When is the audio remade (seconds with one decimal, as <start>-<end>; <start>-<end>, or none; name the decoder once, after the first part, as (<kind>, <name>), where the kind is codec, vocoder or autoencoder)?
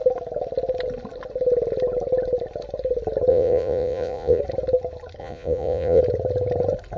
3.3-4.4 (vocoder, Vocos); 5.2-6.0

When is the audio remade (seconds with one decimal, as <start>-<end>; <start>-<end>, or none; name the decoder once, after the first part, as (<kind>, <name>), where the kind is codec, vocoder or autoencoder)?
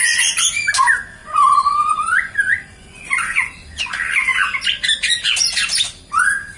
1.2-3.9 (vocoder, Vocos)